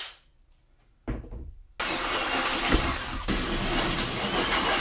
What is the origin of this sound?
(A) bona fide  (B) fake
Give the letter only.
A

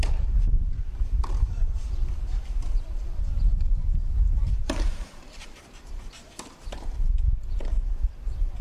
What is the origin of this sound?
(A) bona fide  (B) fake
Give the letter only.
B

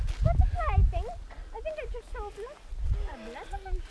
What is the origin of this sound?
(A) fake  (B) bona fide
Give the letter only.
B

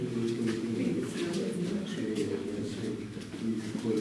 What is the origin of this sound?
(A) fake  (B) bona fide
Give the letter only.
A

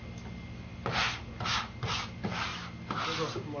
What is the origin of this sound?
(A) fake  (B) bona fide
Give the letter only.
B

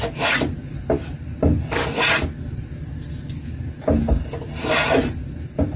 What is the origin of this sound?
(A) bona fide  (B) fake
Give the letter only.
A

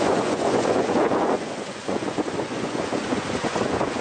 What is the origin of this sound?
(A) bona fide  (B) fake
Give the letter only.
B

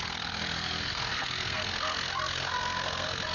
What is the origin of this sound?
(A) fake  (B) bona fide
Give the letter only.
A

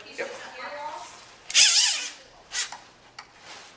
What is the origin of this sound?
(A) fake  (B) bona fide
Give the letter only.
B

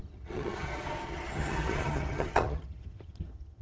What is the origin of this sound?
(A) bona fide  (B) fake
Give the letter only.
B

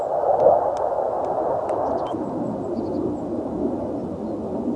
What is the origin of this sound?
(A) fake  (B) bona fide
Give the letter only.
B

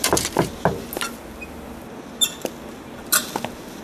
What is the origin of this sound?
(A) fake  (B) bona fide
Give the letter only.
B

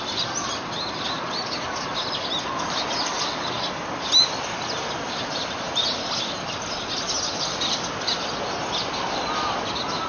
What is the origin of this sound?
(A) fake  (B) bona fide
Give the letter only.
B